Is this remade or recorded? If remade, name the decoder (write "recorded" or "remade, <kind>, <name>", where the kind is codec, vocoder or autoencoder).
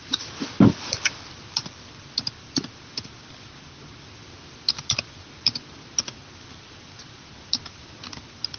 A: recorded